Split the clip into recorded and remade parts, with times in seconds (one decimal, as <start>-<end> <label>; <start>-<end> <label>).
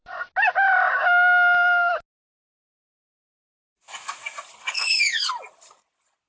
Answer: 0.0-4.6 recorded; 4.6-5.3 remade; 5.3-6.3 recorded